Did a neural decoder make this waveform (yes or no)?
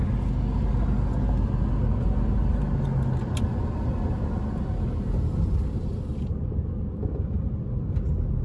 no